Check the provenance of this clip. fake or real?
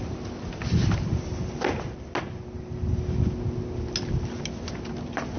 real